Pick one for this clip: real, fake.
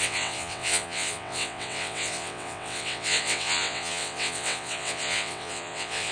fake